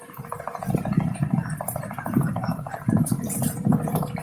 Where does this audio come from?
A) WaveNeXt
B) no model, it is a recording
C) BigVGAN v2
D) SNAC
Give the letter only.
C